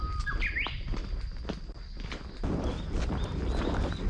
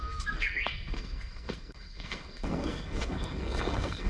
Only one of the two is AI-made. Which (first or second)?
second